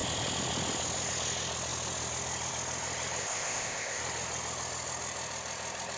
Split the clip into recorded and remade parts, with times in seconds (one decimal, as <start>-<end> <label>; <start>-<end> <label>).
0.0-3.2 recorded; 3.2-4.0 remade; 4.0-6.0 recorded

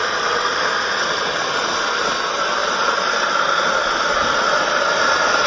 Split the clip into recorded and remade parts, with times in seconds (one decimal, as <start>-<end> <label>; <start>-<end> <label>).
0.0-5.5 recorded